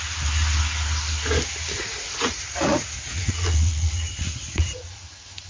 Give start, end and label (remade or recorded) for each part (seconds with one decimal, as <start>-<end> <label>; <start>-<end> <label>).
0.0-1.8 recorded; 1.8-5.1 remade; 5.1-5.5 recorded